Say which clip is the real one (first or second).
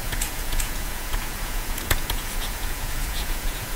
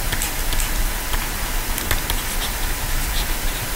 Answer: second